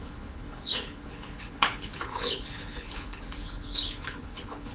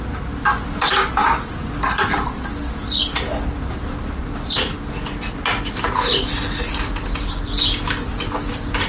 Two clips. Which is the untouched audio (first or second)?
second